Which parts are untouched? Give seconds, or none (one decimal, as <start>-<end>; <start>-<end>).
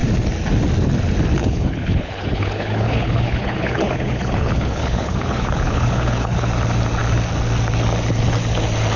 0.0-1.4; 6.5-9.0